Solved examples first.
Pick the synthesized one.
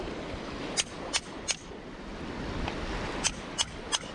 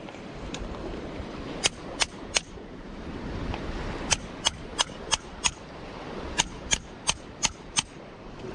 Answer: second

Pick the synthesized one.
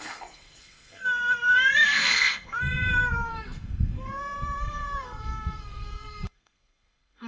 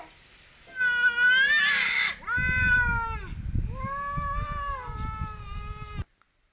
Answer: first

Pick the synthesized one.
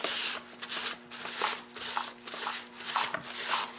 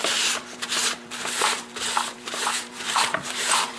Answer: second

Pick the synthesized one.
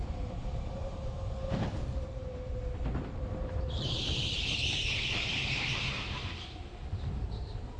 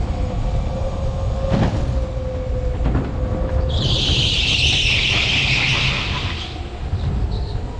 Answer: first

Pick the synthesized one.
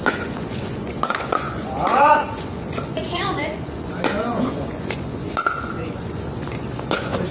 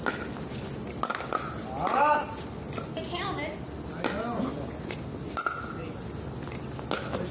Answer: first